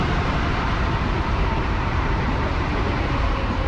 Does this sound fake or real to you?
fake